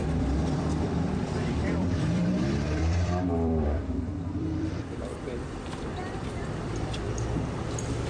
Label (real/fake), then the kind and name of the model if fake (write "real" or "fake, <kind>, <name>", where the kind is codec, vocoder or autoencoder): fake, vocoder, BigVGAN v2